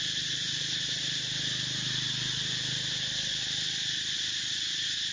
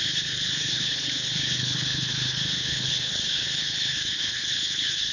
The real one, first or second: first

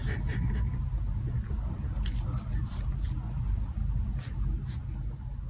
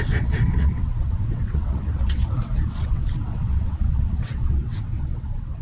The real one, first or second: first